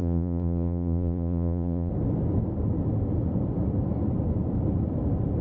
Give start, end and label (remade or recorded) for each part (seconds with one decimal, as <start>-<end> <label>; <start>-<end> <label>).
0.0-1.9 remade; 1.9-5.4 recorded